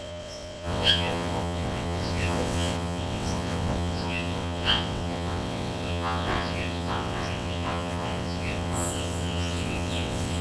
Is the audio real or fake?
fake